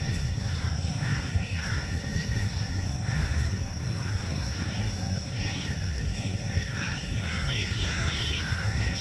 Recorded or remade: remade